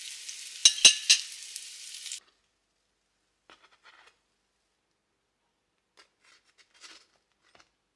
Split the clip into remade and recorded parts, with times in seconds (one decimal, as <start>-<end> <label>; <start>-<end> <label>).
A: 0.0-8.0 recorded